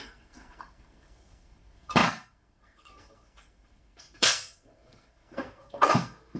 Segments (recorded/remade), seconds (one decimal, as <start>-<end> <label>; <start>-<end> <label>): 0.0-6.4 remade